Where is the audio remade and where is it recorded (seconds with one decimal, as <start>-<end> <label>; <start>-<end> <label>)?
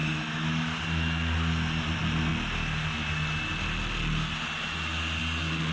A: 0.0-0.8 remade; 0.8-5.7 recorded